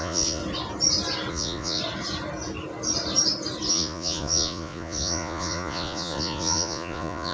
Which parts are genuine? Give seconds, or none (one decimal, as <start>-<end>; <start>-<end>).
0.4-1.3; 1.8-3.7